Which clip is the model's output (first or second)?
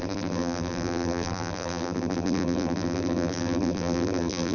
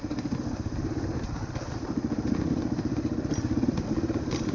first